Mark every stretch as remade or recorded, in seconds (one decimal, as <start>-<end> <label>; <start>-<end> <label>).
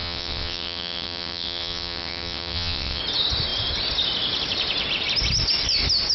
0.0-3.0 remade; 3.0-6.1 recorded